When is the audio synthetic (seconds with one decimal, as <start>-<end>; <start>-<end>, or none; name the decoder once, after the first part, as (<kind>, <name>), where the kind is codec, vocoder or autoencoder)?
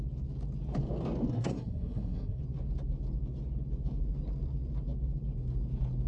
1.3-2.4 (codec, SNAC)